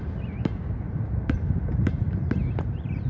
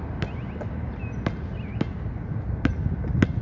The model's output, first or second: first